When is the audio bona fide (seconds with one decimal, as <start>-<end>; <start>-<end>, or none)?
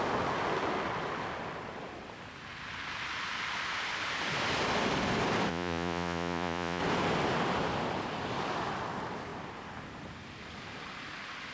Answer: 0.0-5.5; 6.8-11.5